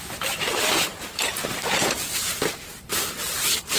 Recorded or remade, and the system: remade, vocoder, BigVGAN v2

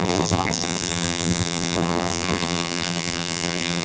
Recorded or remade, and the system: remade, vocoder, BigVGAN v2